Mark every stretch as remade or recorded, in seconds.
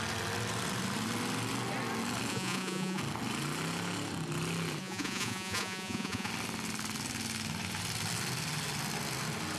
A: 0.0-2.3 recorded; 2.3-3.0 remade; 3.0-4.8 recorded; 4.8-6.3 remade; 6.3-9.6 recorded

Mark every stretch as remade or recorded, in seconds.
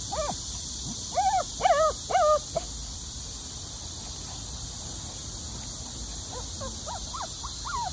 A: 0.0-1.4 remade; 1.4-2.8 recorded; 2.8-3.9 remade; 3.9-7.9 recorded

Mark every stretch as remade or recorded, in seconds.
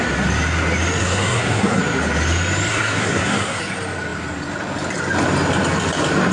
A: 0.0-1.0 recorded; 1.0-1.8 remade; 1.8-2.7 recorded; 2.7-3.6 remade; 3.6-6.3 recorded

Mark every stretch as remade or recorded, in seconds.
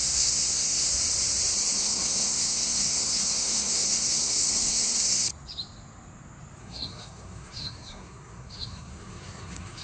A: 0.0-0.9 remade; 0.9-1.8 recorded; 1.8-5.3 remade; 5.3-6.6 recorded; 6.6-9.8 remade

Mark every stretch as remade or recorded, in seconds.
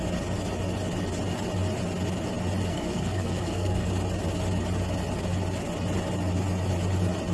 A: 0.0-2.7 recorded; 2.7-3.9 remade; 3.9-7.3 recorded